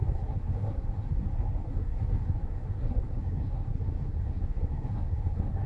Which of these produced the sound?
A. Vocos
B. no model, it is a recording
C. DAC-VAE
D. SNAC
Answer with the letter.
D